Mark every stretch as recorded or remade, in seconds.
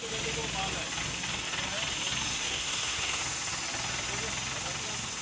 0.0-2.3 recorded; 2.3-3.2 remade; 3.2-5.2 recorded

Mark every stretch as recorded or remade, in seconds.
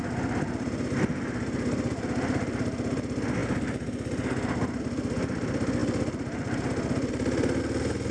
0.0-8.1 recorded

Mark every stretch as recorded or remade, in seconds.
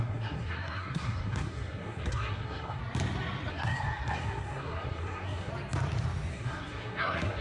0.0-2.8 remade; 2.8-3.5 recorded; 3.5-5.5 remade; 5.5-6.3 recorded; 6.3-7.4 remade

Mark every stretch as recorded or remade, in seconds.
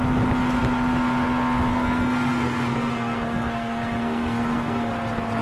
0.0-1.7 recorded; 1.7-4.9 remade; 4.9-5.4 recorded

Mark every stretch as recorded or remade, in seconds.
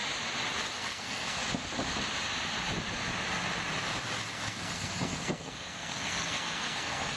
0.0-0.8 recorded; 0.8-1.4 remade; 1.4-4.3 recorded; 4.3-7.2 remade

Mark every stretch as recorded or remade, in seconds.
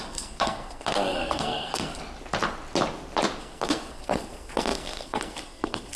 0.0-2.0 remade; 2.0-3.4 recorded; 3.4-6.0 remade